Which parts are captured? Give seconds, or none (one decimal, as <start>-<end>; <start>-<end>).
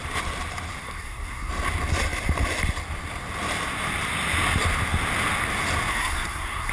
0.0-0.8; 1.5-5.9